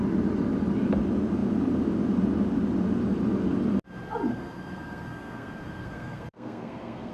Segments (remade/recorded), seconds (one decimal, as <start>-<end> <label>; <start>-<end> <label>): 0.0-4.3 recorded; 4.3-7.1 remade